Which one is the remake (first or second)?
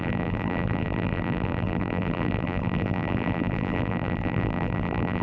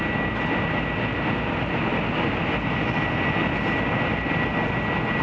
first